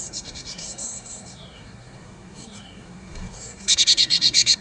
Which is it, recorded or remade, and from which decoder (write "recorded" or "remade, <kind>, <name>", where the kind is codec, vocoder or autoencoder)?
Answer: remade, codec, SNAC